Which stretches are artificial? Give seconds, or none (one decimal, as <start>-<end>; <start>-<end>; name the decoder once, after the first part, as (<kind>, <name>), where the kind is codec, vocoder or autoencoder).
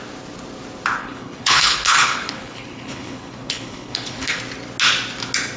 1.0-4.4 (codec, HILCodec)